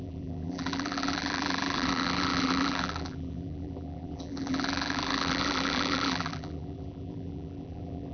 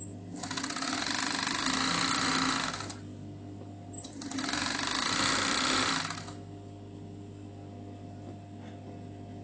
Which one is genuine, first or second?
second